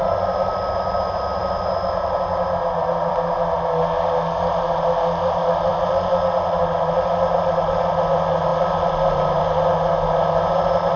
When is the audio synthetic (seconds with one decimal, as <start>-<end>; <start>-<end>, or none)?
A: none